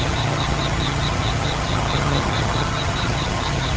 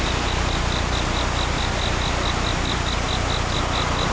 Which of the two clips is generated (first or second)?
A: first